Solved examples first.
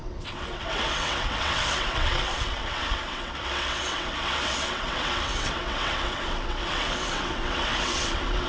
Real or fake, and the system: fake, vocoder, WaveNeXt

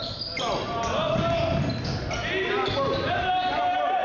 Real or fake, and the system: real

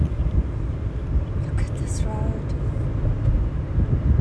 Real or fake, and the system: real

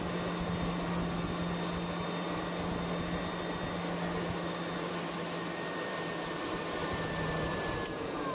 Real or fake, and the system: real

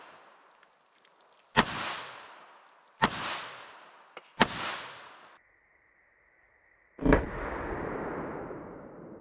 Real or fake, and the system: real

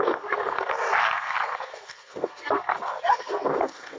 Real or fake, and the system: fake, codec, SNAC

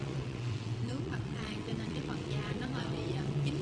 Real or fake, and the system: fake, vocoder, WaveNeXt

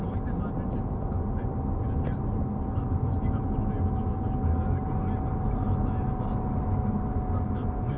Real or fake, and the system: real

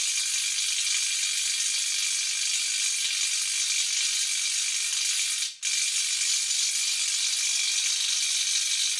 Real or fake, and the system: real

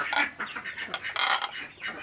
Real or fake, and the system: real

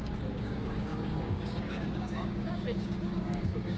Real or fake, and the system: fake, codec, DAC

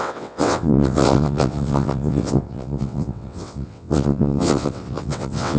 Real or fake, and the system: fake, vocoder, WaveNeXt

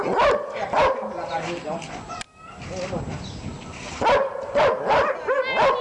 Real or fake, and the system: real